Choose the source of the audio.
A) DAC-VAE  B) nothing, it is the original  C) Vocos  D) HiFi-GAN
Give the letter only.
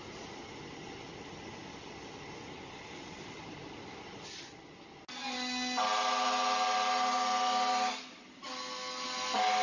B